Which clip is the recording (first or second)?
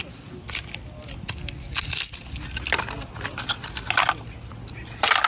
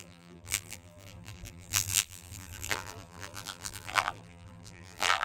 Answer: first